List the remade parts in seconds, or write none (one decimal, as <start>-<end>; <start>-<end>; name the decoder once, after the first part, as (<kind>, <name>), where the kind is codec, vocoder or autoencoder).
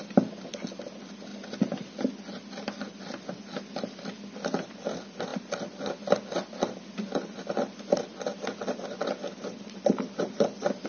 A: none